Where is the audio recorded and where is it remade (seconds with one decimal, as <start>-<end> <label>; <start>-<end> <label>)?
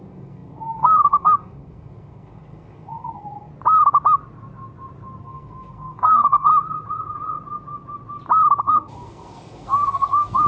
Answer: 0.0-3.5 remade; 3.5-5.2 recorded; 5.2-6.5 remade; 6.5-8.6 recorded; 8.6-10.5 remade